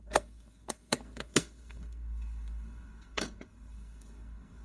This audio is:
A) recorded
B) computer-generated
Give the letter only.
B